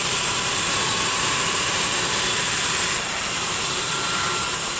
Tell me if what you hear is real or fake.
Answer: fake